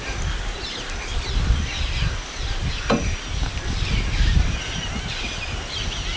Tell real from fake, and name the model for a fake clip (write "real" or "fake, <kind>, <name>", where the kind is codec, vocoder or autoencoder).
real